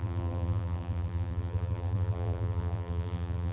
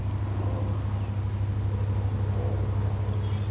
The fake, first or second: first